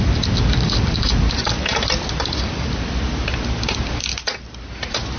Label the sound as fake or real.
real